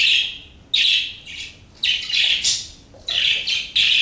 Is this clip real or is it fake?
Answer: real